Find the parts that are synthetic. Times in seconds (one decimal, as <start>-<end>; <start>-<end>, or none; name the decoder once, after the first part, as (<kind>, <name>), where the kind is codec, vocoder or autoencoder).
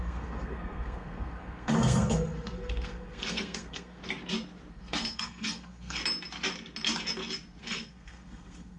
0.0-4.0 (codec, SNAC); 4.7-6.0; 7.6-8.8